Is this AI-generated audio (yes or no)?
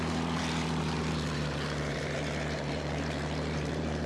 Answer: yes